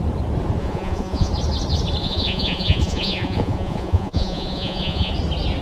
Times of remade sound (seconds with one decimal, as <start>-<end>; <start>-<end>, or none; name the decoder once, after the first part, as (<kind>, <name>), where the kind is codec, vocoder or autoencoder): 0.6-1.3 (vocoder, Vocos); 2.0-5.1